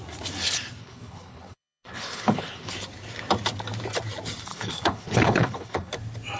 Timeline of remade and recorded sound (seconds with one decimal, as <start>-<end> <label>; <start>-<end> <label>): 0.0-0.8 recorded; 0.8-2.7 remade; 2.7-4.5 recorded; 4.5-5.9 remade; 5.9-6.4 recorded